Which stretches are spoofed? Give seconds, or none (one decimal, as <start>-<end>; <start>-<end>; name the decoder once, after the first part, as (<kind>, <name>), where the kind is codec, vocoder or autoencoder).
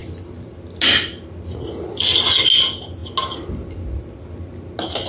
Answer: none